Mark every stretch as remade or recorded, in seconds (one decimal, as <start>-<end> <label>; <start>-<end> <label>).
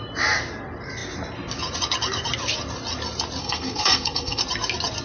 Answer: 0.0-3.4 recorded; 3.4-4.4 remade; 4.4-5.0 recorded